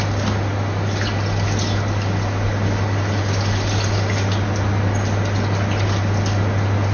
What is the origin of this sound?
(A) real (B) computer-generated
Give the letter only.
A